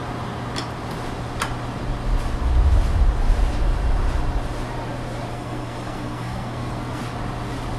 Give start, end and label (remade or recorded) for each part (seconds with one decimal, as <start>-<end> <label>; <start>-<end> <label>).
0.0-5.3 recorded; 5.3-7.0 remade; 7.0-7.8 recorded